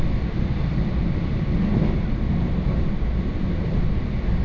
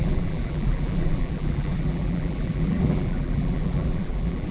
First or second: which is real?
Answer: first